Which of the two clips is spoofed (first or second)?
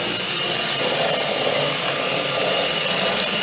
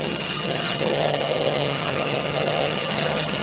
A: second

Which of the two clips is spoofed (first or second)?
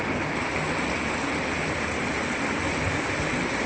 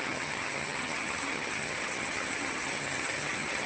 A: second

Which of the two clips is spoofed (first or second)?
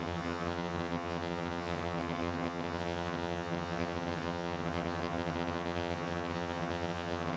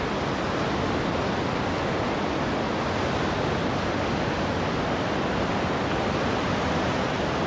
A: first